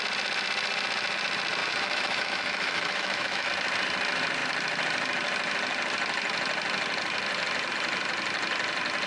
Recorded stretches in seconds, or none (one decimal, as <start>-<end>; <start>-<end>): 0.0-1.6; 3.5-9.1